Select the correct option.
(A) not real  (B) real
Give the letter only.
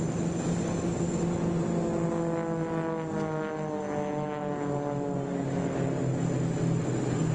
B